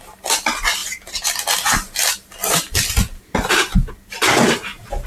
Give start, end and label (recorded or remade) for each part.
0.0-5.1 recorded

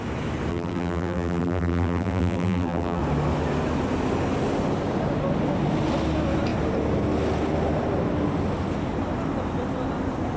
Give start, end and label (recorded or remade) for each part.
0.0-0.5 recorded; 0.5-3.0 remade; 3.0-10.4 recorded

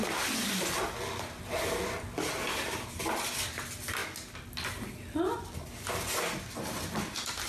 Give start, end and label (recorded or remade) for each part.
0.0-7.5 recorded

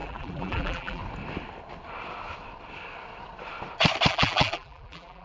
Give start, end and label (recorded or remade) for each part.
0.0-1.0 remade; 1.0-4.1 recorded; 4.1-5.2 remade

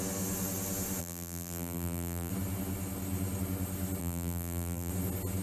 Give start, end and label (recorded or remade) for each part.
0.0-1.0 recorded; 1.0-2.3 remade; 2.3-4.0 recorded; 4.0-4.9 remade; 4.9-5.4 recorded

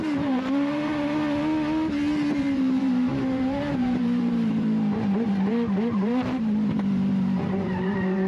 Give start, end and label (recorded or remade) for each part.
0.0-1.2 remade; 1.2-2.4 recorded; 2.4-8.3 remade

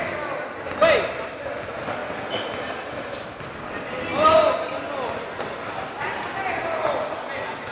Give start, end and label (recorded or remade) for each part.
0.0-7.7 recorded